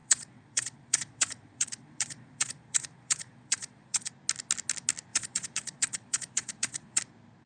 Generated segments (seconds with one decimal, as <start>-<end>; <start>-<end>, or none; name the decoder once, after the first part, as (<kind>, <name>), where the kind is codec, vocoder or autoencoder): 0.0-4.1 (vocoder, Vocos); 5.1-7.0